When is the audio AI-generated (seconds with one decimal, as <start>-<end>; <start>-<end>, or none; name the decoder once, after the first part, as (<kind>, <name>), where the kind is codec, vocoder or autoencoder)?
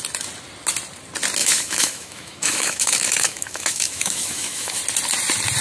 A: 1.4-4.8 (autoencoder, DAC-VAE)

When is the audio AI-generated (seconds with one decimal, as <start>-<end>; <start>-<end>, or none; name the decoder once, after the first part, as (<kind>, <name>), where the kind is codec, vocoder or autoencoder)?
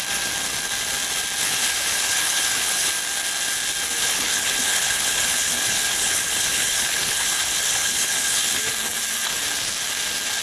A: 1.4-2.9 (codec, HILCodec); 4.0-8.6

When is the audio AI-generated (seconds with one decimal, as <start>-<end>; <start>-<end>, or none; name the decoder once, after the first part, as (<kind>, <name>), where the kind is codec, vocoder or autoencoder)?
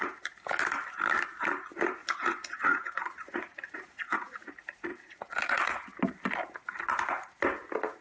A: 2.0-4.5 (vocoder, Vocos); 4.9-5.7